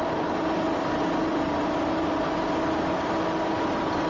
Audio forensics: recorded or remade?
recorded